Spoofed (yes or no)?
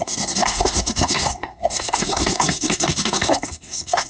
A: yes